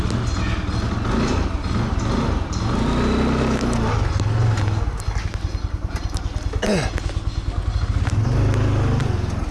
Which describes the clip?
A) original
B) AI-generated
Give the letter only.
A